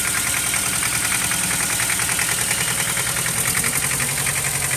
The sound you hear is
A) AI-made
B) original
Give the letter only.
B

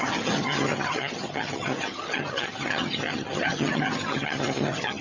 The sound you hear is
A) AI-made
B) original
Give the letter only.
A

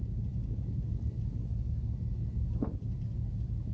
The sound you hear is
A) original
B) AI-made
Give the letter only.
A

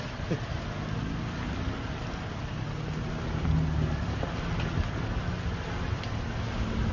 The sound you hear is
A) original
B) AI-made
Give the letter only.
A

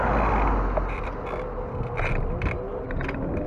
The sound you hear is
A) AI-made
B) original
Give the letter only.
B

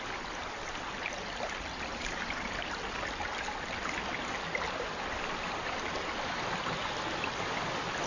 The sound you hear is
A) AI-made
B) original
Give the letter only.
B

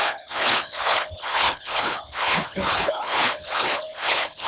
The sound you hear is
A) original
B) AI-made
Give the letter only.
B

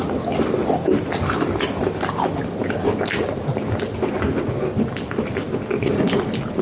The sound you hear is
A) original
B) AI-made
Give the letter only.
A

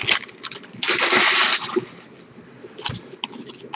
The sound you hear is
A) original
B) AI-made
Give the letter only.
A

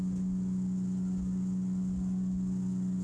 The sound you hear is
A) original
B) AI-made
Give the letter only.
A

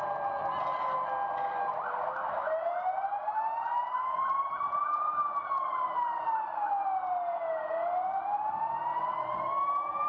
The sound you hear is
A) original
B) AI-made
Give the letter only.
A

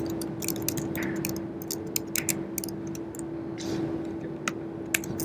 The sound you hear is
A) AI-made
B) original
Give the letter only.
B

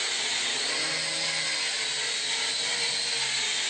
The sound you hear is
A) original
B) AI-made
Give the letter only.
A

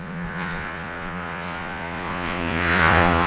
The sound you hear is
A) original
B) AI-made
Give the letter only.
B